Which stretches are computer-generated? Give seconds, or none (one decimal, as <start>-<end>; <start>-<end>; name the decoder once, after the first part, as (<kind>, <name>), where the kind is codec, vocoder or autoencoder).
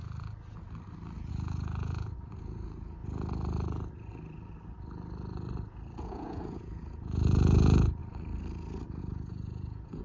1.3-3.0 (vocoder, Vocos); 6.0-8.0; 9.0-10.0